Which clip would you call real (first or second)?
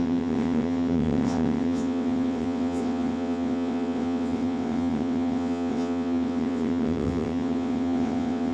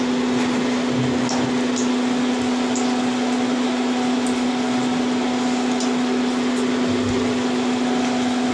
second